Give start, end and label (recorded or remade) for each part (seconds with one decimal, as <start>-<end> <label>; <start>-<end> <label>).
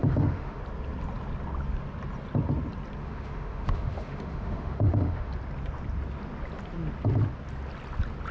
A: 0.0-0.6 remade; 0.6-3.0 recorded; 3.0-5.3 remade; 5.3-8.3 recorded